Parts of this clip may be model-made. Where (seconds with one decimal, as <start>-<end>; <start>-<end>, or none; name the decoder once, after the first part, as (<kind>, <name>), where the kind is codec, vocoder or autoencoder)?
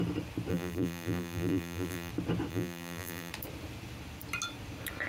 0.5-2.1 (vocoder, BigVGAN v2); 2.5-3.3